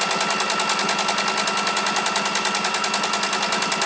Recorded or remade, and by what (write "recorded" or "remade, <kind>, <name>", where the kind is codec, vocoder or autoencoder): recorded